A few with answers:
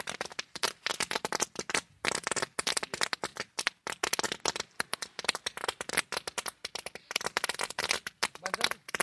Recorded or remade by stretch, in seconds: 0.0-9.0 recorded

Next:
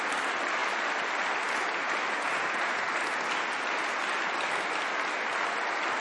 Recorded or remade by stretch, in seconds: 0.0-1.8 recorded; 1.8-2.9 remade; 2.9-6.0 recorded

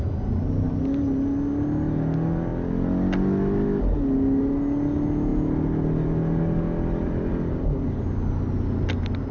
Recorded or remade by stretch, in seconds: 0.0-9.3 recorded